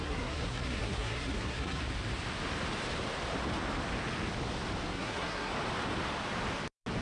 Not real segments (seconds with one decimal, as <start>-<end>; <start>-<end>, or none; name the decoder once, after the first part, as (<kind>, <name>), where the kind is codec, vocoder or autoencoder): 0.0-1.8 (codec, SNAC); 4.9-5.5